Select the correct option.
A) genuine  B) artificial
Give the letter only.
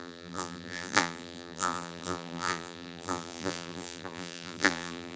B